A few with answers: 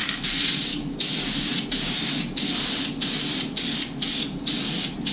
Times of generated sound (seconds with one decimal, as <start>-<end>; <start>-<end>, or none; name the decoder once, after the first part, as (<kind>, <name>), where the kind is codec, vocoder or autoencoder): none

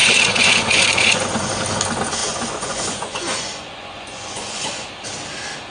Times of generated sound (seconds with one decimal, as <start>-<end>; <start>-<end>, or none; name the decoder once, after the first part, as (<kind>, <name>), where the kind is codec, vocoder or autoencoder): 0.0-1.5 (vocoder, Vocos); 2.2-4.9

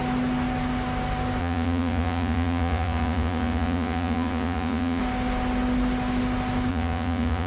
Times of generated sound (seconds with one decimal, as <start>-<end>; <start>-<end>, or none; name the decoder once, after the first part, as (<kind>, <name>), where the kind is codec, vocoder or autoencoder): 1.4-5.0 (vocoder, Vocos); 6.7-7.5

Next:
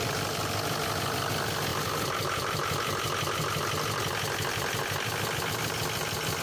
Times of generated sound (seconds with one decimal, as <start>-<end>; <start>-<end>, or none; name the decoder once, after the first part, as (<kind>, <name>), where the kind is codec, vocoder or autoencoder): none